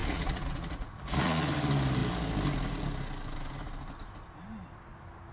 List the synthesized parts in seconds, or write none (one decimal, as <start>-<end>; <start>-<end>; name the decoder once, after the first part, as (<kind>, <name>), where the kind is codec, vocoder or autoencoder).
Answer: 0.0-1.5 (vocoder, Vocos)